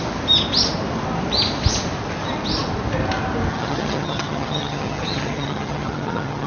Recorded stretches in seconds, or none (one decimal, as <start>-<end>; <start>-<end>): 0.0-3.5